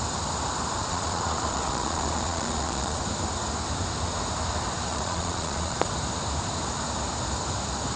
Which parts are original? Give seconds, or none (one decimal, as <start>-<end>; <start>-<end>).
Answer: 0.0-0.8; 3.0-4.9; 5.9-8.0